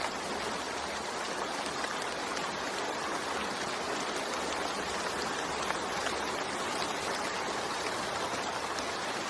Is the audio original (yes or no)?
yes